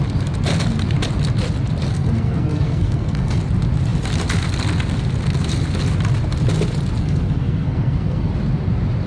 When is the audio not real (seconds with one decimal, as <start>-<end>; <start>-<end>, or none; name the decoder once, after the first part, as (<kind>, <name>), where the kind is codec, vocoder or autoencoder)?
1.9-3.4 (codec, SNAC); 7.0-8.3